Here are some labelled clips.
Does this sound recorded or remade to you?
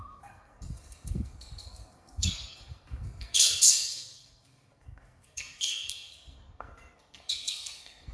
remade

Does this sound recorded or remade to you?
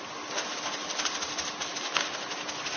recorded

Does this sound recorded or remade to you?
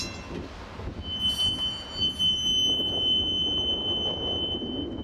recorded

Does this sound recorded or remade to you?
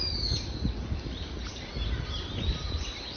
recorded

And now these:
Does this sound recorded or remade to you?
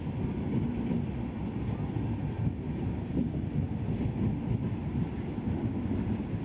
recorded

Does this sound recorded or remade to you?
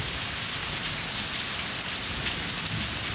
recorded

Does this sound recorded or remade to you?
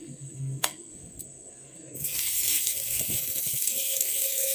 remade